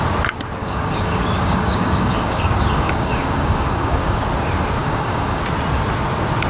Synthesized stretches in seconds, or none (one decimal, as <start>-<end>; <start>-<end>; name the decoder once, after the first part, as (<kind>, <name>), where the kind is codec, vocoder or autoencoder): 0.6-4.2 (codec, DAC); 4.8-5.4